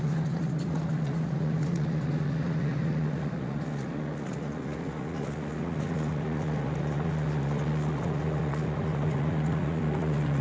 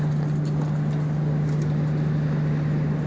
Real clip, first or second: second